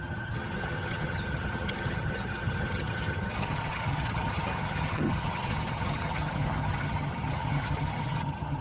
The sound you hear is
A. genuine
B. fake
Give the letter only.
B